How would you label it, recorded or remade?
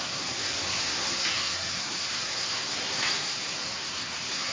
remade